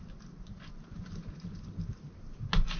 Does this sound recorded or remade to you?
recorded